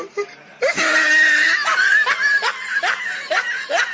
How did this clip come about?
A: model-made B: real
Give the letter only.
B